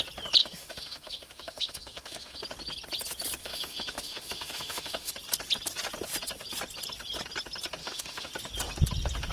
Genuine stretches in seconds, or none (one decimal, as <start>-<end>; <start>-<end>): 0.0-0.4; 2.4-3.4; 5.1-7.8; 8.3-9.3